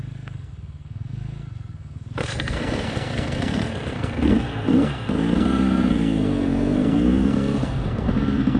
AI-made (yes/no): yes